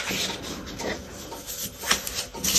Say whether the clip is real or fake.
real